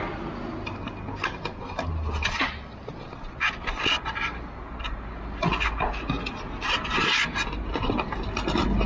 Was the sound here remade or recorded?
recorded